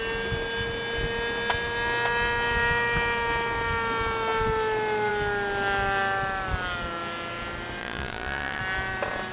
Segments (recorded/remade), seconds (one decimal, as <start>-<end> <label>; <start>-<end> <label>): 0.0-7.8 recorded; 7.8-8.6 remade; 8.6-9.3 recorded